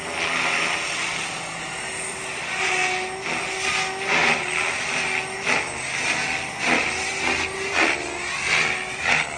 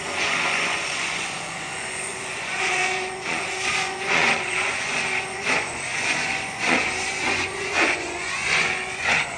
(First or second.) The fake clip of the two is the second